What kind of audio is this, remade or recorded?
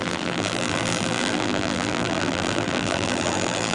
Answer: remade